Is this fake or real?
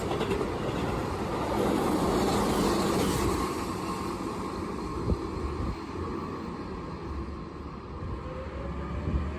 real